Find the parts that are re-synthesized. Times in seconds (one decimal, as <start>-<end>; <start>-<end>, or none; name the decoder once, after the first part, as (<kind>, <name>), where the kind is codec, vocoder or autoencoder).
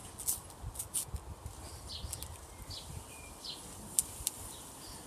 none